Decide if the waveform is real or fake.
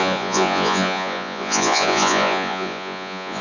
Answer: fake